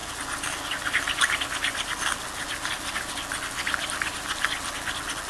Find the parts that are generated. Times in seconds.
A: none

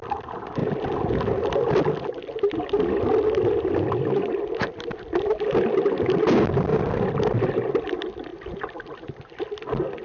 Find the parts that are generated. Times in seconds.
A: 8.3-9.3 (vocoder, BigVGAN v2)

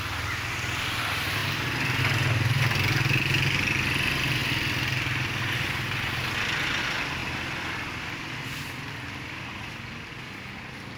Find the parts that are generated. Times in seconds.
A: none

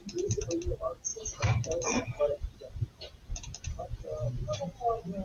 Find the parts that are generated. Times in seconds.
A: 1.1-4.0 (vocoder, BigVGAN v2)

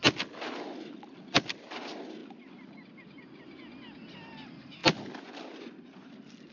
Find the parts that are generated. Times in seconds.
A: none

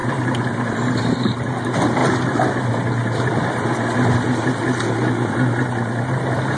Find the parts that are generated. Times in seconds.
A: 1.0-2.0 (vocoder, BigVGAN v2); 6.0-6.6